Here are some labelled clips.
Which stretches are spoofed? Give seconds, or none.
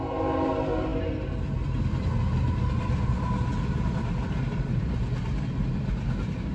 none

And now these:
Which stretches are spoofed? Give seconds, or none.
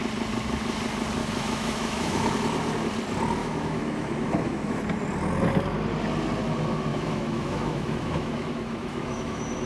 1.2-2.3 (autoencoder, DAC-VAE); 3.4-4.8; 6.9-9.7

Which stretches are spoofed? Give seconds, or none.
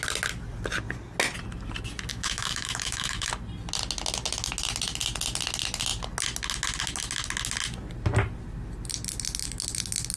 2.1-3.3 (autoencoder, DAC-VAE)